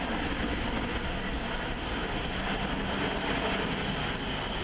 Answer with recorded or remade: recorded